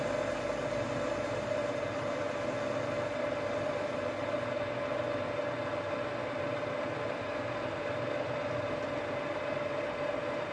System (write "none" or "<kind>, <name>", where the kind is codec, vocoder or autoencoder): none